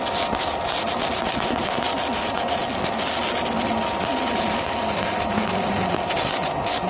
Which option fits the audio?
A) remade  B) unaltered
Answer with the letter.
B